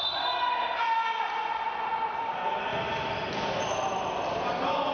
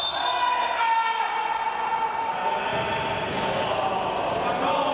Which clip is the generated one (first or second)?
first